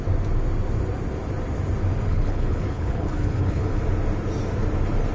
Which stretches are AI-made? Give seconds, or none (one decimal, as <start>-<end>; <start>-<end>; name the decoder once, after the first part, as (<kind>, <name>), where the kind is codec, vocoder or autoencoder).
2.1-3.8 (codec, HILCodec)